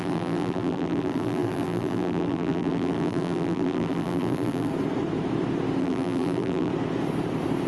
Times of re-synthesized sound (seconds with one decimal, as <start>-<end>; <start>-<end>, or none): 0.0-4.7; 5.8-6.7